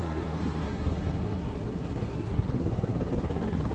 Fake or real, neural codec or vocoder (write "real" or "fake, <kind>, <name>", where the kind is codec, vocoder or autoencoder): fake, codec, SNAC